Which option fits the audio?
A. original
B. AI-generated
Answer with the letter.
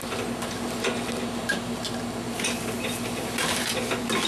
A